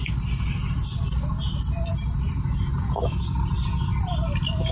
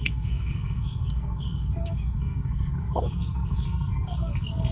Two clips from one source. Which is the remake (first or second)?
second